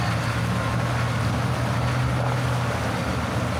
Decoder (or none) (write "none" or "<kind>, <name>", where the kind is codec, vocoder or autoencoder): none